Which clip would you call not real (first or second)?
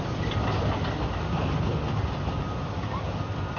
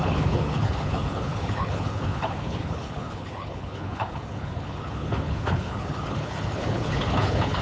second